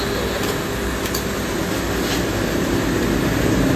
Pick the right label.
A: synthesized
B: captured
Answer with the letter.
B